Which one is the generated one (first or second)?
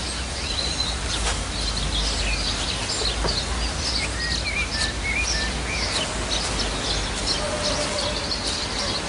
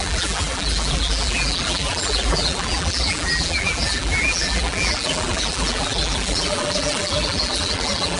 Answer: second